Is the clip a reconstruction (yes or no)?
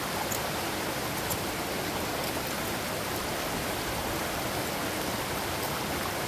no